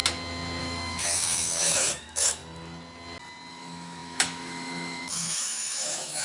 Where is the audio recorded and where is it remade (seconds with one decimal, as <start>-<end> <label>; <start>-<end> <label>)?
0.0-0.6 recorded; 0.6-2.4 remade; 2.4-3.5 recorded; 3.5-6.2 remade